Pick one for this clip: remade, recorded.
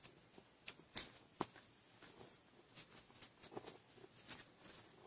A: recorded